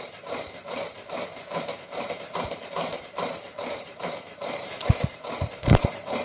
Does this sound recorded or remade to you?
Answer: remade